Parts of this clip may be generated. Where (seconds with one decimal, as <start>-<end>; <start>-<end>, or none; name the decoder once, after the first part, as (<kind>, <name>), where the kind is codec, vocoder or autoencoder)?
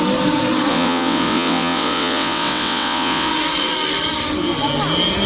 0.7-3.3 (vocoder, WaveNeXt)